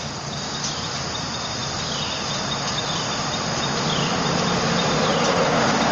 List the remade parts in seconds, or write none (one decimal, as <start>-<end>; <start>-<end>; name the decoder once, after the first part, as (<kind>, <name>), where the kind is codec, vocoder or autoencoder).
none